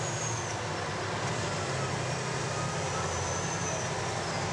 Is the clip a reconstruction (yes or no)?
no